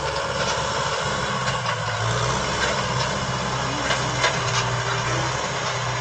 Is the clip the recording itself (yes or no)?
yes